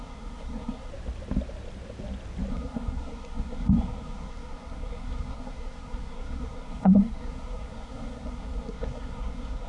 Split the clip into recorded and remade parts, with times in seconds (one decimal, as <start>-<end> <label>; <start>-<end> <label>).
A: 0.0-0.9 remade; 0.9-2.5 recorded; 2.5-9.7 remade